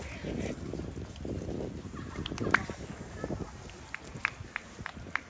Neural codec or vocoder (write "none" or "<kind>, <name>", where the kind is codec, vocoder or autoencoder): none